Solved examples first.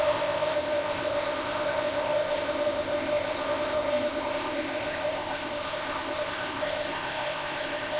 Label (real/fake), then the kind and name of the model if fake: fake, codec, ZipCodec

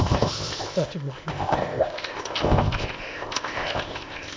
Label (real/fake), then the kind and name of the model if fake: fake, codec, ZipCodec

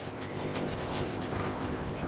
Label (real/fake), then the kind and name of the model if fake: fake, codec, ZipCodec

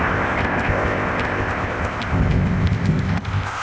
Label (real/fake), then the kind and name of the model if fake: fake, codec, ZipCodec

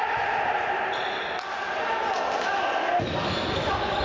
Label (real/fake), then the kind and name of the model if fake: real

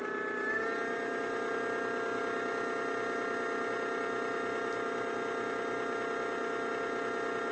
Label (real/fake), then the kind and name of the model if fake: real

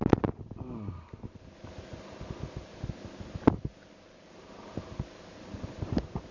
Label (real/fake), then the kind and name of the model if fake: real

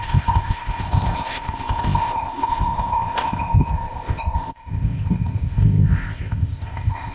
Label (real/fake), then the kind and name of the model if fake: fake, codec, ZipCodec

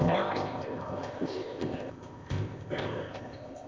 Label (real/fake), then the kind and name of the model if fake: fake, codec, ZipCodec